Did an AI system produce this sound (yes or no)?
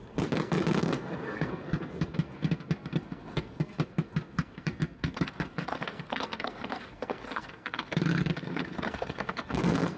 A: yes